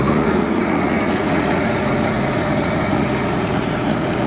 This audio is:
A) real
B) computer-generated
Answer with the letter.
B